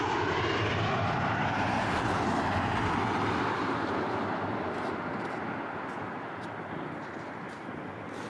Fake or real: real